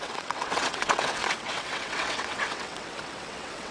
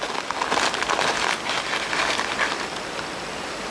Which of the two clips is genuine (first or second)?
second